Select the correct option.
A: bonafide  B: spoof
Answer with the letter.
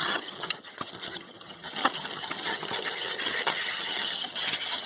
B